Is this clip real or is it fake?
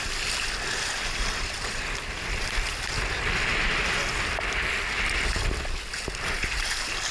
real